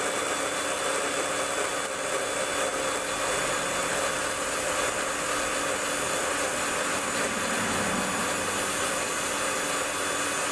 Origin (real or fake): real